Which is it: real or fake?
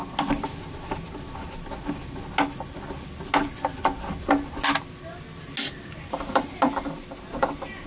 real